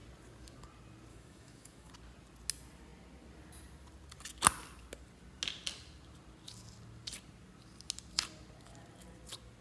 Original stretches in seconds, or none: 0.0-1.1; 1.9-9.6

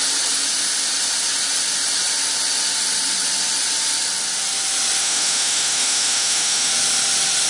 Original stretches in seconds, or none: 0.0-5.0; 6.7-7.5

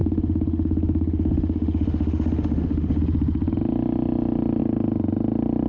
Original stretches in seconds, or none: 3.0-5.7

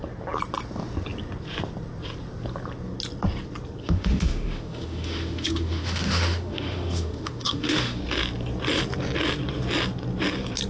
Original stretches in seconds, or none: 0.0-3.8; 8.0-10.7

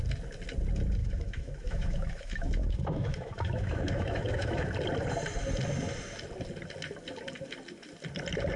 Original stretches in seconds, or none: 0.0-1.0; 4.7-8.6

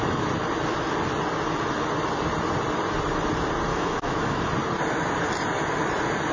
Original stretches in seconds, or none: 0.0-3.7; 4.4-6.3

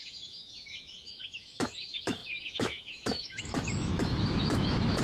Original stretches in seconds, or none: none